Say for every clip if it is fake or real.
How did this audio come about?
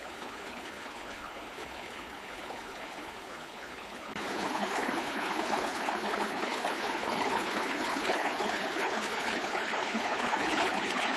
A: fake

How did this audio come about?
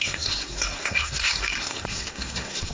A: fake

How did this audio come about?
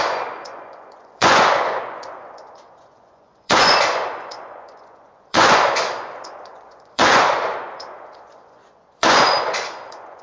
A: fake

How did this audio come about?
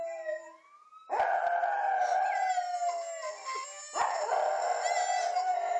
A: real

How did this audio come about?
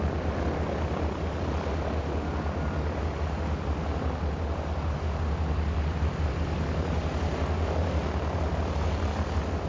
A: real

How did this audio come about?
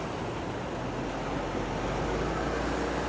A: real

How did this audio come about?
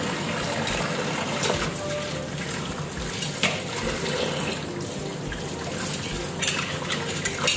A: real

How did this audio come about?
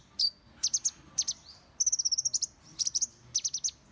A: real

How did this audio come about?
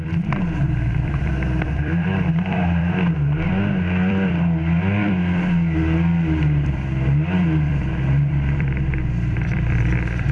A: fake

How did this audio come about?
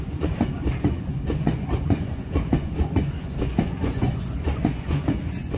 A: fake